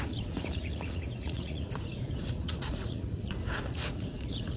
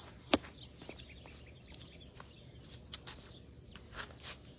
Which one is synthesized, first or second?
first